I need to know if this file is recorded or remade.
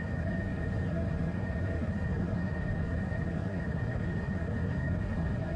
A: remade